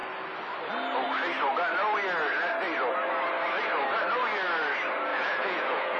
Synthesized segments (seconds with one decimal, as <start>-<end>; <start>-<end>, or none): 5.1-6.0